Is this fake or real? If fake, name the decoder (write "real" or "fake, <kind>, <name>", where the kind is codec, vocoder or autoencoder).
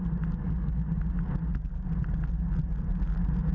real